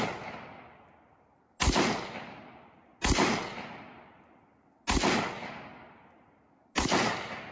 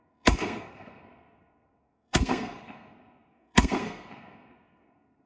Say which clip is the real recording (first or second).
first